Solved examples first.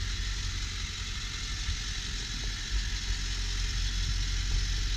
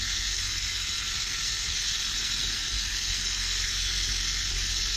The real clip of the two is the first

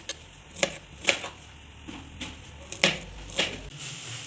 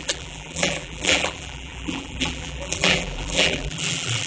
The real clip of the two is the first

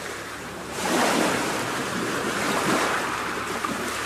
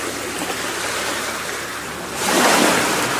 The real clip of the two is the second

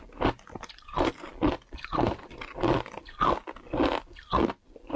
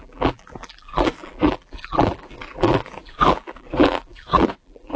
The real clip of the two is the first